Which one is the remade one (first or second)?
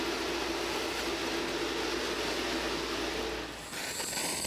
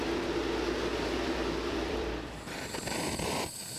second